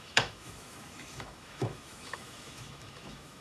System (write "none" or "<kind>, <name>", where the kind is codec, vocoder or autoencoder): autoencoder, DAC-VAE